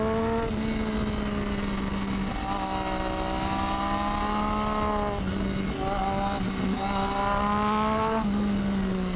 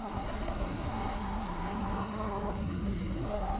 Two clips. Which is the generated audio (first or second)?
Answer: second